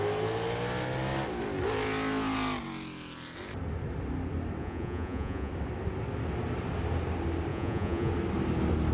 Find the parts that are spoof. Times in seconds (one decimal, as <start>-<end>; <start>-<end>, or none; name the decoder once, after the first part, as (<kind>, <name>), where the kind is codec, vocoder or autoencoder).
4.6-5.5 (vocoder, Vocos); 7.5-8.1